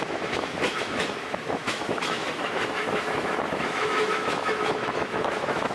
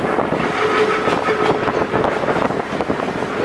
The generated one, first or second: first